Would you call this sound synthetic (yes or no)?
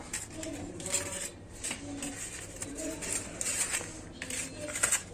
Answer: no